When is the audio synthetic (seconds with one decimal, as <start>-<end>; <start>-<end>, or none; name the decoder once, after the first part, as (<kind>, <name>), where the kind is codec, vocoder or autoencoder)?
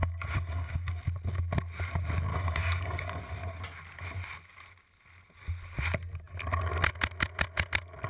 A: 0.0-1.0 (codec, DAC); 2.3-3.2